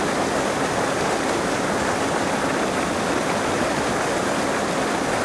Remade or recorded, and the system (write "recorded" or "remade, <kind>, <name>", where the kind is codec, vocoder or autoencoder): recorded